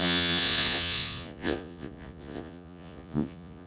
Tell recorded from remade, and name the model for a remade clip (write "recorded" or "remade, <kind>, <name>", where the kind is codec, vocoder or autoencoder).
remade, vocoder, Vocos